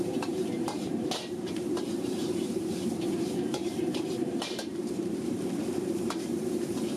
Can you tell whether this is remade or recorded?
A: remade